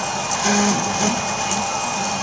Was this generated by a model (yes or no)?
no